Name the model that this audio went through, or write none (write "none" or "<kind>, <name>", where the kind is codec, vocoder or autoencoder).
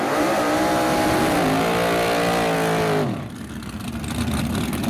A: none